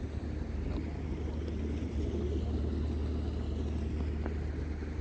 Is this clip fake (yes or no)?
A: no